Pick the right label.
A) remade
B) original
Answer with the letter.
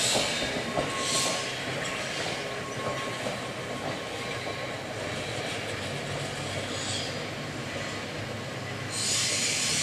B